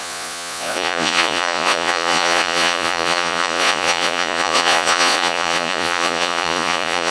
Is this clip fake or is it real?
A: fake